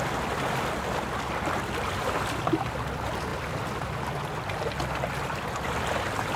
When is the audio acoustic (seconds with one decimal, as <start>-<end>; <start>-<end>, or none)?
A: 0.0-6.4